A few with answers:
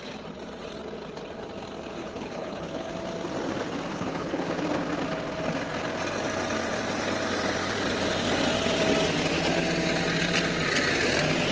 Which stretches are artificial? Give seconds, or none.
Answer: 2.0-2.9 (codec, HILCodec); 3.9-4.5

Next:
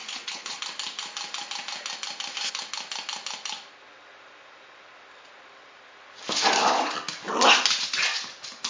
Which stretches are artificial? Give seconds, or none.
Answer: 0.0-0.6 (codec, HILCodec)